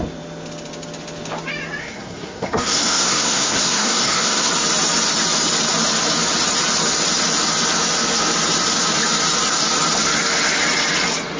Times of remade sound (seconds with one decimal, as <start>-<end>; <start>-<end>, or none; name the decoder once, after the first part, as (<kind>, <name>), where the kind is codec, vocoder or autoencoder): 1.8-4.5 (codec, SNAC)